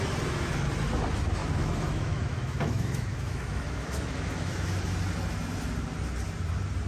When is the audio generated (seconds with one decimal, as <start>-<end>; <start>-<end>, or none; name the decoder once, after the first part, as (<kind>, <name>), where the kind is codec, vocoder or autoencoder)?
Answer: 1.4-4.8 (autoencoder, DAC-VAE)